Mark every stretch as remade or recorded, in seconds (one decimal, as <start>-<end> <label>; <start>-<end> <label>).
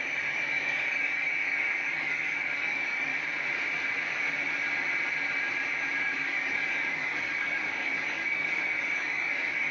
0.0-3.1 remade; 3.1-6.0 recorded; 6.0-9.7 remade